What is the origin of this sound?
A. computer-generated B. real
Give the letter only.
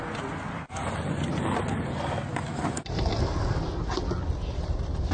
B